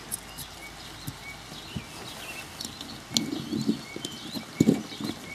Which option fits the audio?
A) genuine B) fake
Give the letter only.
A